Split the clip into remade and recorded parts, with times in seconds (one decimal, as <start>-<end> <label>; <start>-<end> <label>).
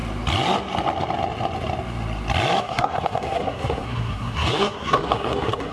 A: 0.0-2.6 recorded; 2.6-5.7 remade